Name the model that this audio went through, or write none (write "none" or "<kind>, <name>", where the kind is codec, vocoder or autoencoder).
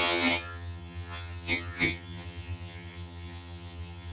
vocoder, HiFi-GAN